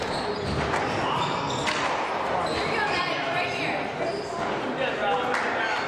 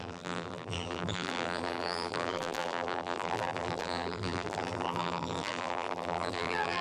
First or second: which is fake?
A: second